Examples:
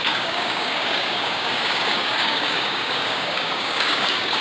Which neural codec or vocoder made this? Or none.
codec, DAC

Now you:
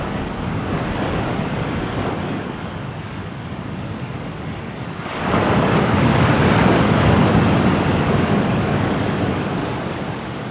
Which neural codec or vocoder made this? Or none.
codec, DAC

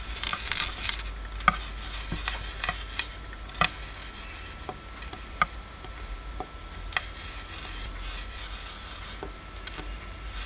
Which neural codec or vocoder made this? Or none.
none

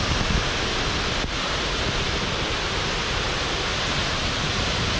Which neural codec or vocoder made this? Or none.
none